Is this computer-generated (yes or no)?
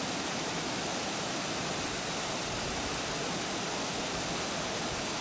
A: no